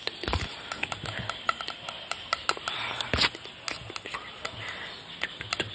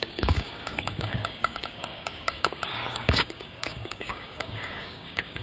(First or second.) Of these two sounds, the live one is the first